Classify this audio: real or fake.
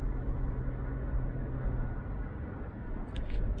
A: real